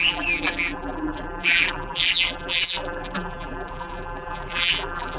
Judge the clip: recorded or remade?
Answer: remade